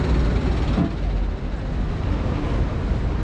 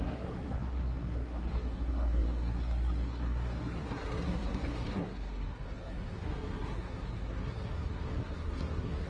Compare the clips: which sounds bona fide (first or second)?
first